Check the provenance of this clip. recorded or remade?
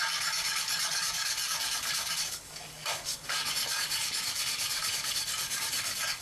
remade